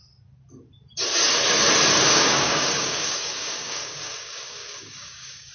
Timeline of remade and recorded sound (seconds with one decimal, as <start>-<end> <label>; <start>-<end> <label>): 0.0-2.1 recorded; 2.1-5.5 remade